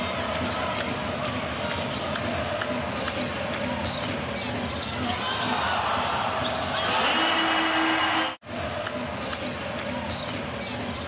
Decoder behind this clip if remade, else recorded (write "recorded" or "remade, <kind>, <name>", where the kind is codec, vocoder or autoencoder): recorded